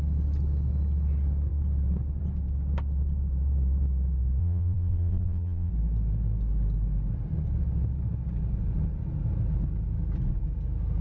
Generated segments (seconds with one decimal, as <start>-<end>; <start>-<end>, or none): 4.4-5.7